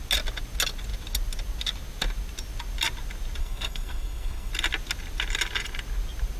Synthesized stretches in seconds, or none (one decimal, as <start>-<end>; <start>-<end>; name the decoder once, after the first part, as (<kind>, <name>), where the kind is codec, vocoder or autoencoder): 3.4-4.5 (codec, SNAC)